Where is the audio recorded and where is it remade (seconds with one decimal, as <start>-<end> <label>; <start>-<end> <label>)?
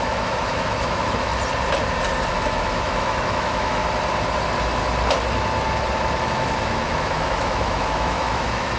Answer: 0.0-1.3 remade; 1.3-2.3 recorded; 2.3-3.8 remade; 3.8-6.2 recorded; 6.2-8.8 remade